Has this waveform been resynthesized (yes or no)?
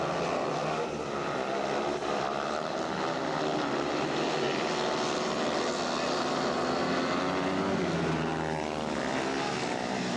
no